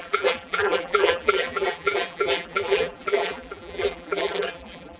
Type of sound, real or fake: fake